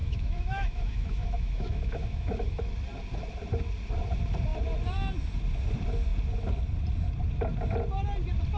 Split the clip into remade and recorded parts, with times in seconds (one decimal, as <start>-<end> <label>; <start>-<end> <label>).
0.0-2.6 remade; 2.6-8.6 recorded